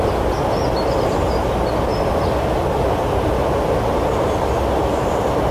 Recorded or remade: recorded